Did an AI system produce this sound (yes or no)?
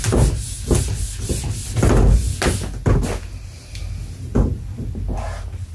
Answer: no